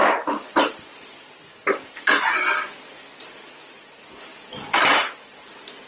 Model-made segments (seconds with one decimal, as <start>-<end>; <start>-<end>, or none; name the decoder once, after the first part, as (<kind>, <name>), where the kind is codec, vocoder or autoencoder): 0.0-2.3 (vocoder, BigVGAN v2); 4.3-5.4